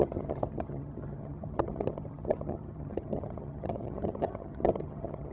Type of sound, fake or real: fake